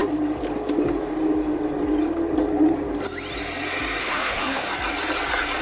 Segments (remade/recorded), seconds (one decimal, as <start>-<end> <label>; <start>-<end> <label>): 0.0-4.0 recorded; 4.0-4.7 remade; 4.7-5.6 recorded